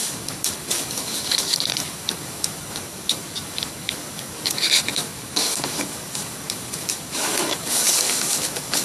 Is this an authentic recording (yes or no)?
no